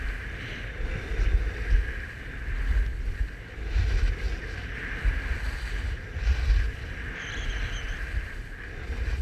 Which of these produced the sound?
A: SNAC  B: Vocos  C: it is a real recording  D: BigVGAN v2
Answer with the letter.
C